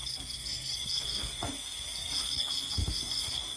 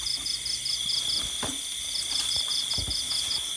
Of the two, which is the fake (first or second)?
first